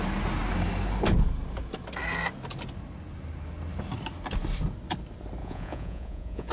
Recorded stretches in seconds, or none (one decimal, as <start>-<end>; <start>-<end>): 0.0-5.4